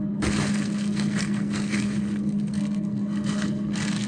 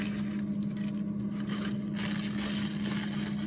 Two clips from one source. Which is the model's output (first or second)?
first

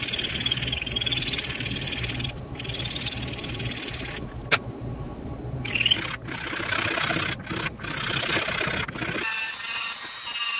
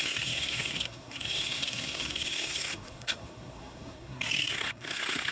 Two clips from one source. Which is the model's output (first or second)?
second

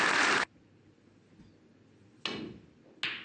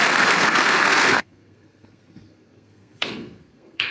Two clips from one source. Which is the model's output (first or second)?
second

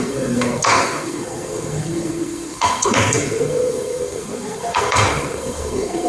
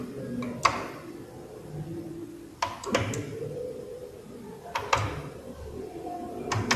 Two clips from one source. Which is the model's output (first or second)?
first